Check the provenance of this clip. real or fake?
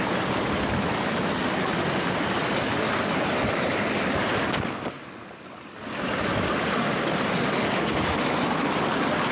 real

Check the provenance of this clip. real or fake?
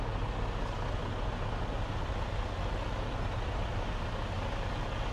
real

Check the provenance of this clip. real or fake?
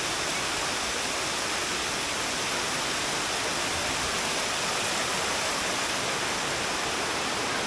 real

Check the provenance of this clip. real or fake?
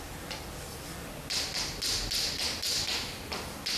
real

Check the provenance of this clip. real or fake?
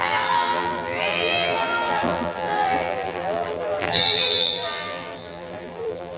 fake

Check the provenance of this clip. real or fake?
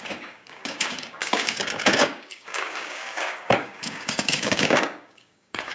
fake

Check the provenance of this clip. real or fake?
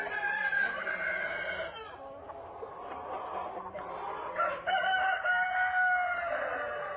real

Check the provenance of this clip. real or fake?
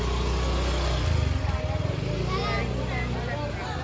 real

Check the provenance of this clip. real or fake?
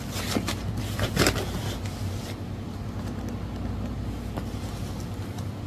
real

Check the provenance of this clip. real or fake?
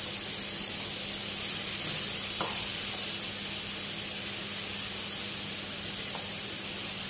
real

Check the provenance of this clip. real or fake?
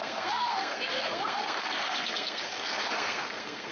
fake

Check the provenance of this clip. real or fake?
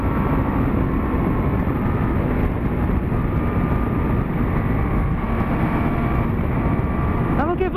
real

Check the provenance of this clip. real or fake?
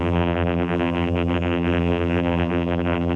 fake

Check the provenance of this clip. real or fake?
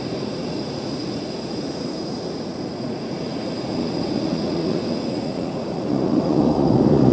fake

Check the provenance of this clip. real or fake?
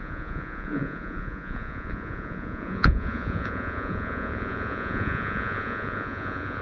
fake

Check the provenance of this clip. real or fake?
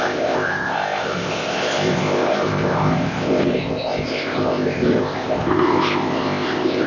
fake